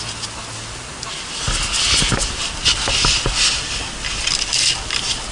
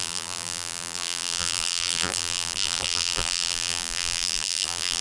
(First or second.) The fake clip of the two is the second